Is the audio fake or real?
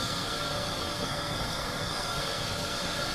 fake